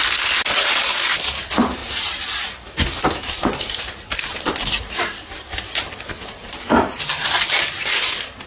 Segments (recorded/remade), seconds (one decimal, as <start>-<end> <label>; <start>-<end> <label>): 0.0-1.8 recorded; 1.8-5.8 remade; 5.8-8.5 recorded